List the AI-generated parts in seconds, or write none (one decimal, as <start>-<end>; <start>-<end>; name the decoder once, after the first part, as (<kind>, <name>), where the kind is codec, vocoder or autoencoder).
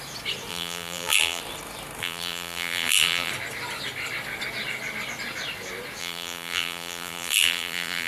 0.5-1.4 (vocoder, BigVGAN v2); 2.0-3.3; 6.0-8.1